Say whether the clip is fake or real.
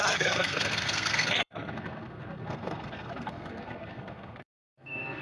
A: fake